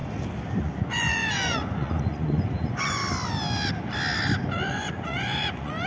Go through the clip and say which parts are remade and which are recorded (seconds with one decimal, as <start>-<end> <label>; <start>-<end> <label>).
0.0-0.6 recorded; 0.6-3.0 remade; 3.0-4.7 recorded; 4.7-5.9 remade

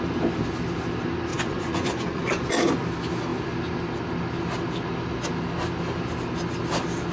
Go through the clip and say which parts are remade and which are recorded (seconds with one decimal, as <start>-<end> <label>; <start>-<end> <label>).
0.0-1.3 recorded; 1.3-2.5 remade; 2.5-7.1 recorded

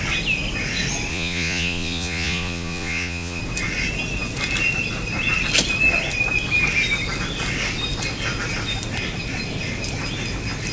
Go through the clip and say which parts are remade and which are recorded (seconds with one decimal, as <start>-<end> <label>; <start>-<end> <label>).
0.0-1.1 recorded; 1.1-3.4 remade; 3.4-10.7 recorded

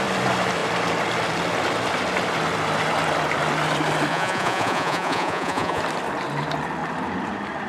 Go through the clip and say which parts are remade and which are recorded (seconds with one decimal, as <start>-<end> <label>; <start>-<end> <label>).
0.0-4.1 recorded; 4.1-5.8 remade; 5.8-7.7 recorded

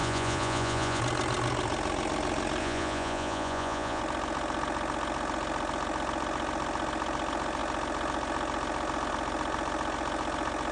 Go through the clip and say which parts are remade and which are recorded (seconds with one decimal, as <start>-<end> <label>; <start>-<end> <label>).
0.0-1.0 remade; 1.0-2.6 recorded; 2.6-4.0 remade; 4.0-10.7 recorded

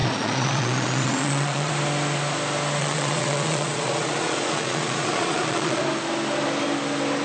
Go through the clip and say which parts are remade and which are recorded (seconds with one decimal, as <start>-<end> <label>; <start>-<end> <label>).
0.0-1.7 remade; 1.7-2.8 recorded; 2.8-5.8 remade; 5.8-7.2 recorded

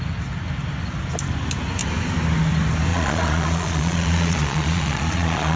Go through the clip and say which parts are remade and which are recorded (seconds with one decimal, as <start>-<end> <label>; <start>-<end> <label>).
0.0-2.9 recorded; 2.9-5.6 remade